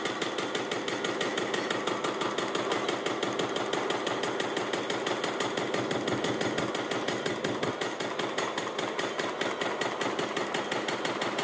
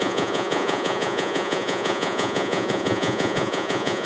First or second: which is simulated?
second